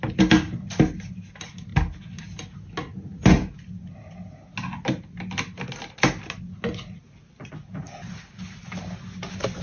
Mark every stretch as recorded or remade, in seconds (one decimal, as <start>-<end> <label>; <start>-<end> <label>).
0.0-9.6 recorded